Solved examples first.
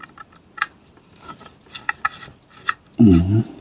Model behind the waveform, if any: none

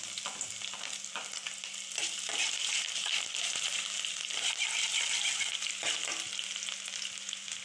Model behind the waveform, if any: none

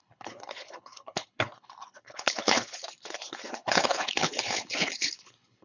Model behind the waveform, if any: codec, HILCodec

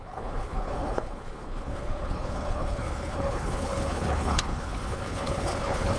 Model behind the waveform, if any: codec, HILCodec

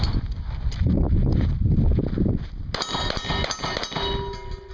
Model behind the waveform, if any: none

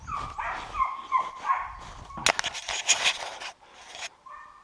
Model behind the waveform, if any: none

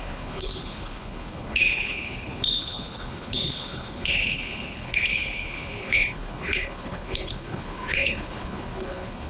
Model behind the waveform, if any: codec, HILCodec